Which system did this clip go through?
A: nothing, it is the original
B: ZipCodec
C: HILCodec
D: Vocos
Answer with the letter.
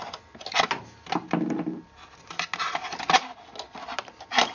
A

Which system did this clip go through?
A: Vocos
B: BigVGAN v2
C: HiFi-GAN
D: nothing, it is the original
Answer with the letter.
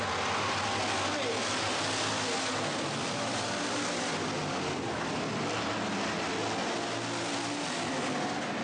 D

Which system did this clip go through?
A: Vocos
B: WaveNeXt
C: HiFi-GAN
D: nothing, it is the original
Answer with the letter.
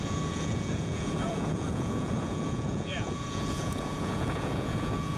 A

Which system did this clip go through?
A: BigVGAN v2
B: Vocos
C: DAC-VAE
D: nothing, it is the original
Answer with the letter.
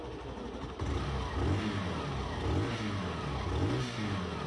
D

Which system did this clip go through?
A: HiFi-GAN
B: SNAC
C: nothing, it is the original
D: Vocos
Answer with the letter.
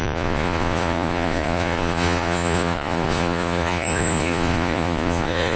D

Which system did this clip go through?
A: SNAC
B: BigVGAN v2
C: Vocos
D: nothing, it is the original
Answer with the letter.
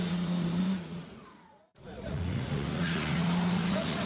C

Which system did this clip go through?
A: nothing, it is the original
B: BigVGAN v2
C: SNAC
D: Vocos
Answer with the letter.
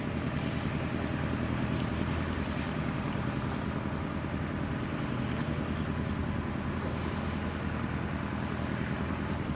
A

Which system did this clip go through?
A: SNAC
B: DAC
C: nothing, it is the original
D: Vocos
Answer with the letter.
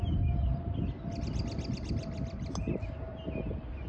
C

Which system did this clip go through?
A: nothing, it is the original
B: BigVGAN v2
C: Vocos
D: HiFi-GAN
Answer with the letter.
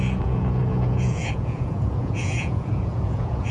C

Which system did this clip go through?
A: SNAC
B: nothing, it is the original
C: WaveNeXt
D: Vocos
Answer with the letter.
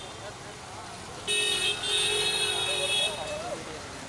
B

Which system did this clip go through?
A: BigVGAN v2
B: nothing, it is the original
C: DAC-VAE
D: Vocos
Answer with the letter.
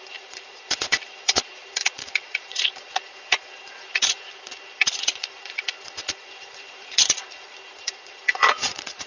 D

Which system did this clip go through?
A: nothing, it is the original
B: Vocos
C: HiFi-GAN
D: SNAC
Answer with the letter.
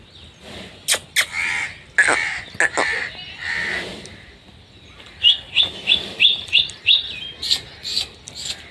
A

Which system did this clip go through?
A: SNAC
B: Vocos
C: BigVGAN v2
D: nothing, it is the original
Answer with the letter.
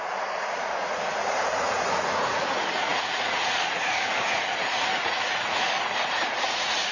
B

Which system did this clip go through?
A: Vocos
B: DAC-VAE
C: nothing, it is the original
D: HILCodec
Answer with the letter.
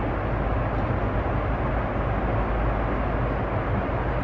C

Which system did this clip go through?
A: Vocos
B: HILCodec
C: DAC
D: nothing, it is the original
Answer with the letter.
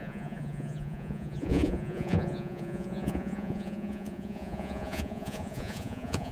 A